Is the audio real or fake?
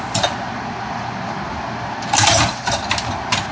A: real